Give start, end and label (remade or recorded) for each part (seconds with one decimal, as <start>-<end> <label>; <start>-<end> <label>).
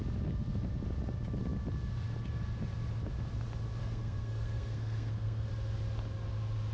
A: 0.0-3.8 recorded; 3.8-5.5 remade; 5.5-6.7 recorded